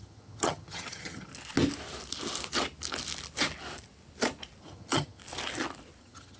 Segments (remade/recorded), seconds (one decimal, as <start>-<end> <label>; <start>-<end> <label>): 0.0-1.3 remade; 1.3-4.6 recorded; 4.6-5.2 remade; 5.2-6.0 recorded; 6.0-6.4 remade